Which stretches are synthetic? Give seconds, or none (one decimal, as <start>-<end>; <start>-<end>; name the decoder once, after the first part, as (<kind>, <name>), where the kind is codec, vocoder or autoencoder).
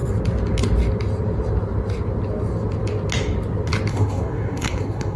3.9-5.2 (codec, SNAC)